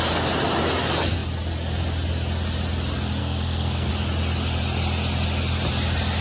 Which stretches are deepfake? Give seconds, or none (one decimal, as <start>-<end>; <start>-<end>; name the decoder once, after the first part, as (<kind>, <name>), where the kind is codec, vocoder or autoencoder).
3.2-3.9 (codec, SNAC)

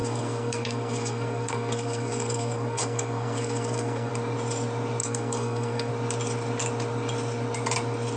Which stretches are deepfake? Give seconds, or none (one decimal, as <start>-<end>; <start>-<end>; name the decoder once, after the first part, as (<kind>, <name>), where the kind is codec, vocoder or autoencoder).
0.0-4.1 (codec, SNAC); 5.0-5.9

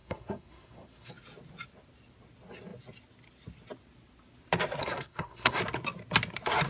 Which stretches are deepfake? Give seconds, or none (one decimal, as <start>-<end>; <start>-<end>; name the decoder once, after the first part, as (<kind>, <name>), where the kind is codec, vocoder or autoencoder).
0.0-1.1 (codec, SNAC); 4.8-5.6

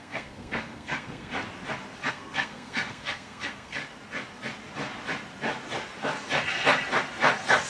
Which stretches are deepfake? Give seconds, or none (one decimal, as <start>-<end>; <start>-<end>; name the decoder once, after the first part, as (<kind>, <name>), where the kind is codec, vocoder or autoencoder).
0.0-1.3 (codec, SNAC); 2.1-3.8

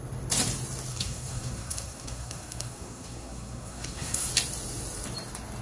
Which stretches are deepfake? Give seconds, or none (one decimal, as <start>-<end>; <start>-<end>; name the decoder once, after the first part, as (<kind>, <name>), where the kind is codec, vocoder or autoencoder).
0.9-4.3 (codec, SNAC)

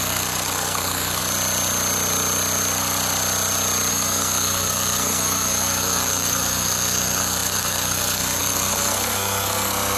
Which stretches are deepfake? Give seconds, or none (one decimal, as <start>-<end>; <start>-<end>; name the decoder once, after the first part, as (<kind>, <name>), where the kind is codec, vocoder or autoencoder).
0.0-1.2 (codec, SNAC); 3.9-10.0